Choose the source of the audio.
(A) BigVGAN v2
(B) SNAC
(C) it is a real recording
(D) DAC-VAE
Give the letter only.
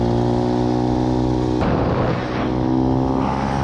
C